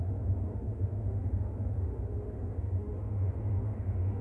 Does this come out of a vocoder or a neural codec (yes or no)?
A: yes